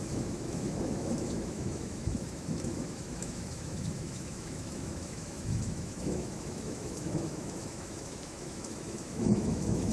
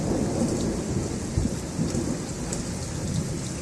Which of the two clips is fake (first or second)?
first